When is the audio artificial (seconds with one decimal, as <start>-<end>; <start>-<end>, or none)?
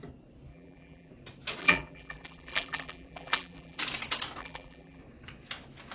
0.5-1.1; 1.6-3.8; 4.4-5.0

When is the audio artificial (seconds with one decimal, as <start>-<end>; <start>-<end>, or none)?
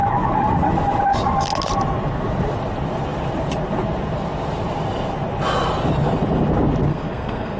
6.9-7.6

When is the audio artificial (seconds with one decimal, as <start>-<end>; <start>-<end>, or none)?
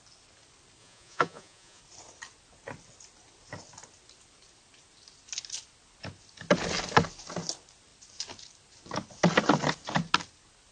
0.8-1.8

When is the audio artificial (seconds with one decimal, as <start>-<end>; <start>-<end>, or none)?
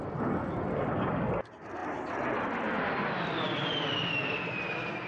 none